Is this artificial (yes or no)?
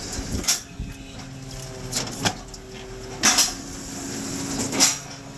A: no